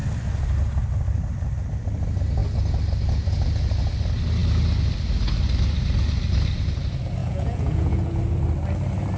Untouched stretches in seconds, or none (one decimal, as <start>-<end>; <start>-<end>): 0.0-7.2; 8.2-9.2